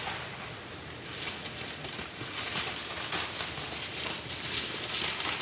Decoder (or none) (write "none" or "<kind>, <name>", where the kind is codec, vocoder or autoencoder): none